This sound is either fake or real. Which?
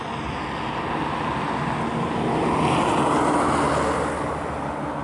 real